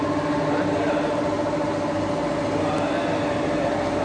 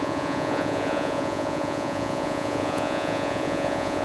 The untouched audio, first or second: first